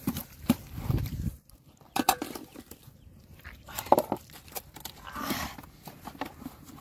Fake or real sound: fake